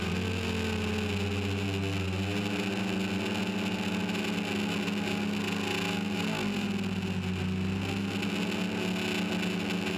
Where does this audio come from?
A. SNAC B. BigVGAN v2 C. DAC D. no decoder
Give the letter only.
D